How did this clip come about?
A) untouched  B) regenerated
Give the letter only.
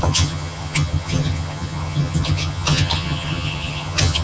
B